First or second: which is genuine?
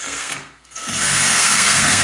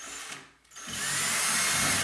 second